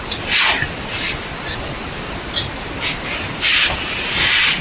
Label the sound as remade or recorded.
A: recorded